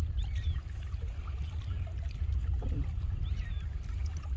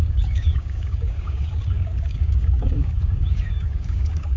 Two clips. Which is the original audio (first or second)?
first